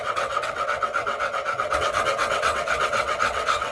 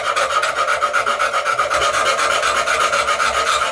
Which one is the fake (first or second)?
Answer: first